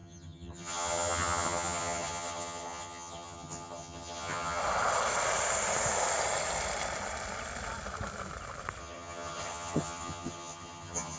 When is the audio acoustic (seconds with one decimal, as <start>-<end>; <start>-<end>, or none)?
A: 4.6-8.8